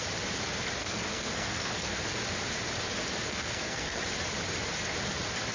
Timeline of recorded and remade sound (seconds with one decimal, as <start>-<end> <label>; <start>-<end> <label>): 0.0-0.8 recorded; 0.8-2.0 remade; 2.0-3.3 recorded; 3.3-4.0 remade; 4.0-5.5 recorded